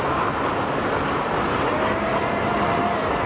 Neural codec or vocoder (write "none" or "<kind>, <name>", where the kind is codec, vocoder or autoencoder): none